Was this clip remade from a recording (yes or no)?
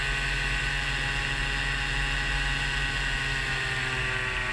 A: no